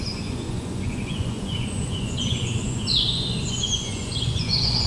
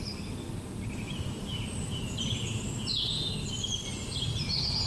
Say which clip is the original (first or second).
second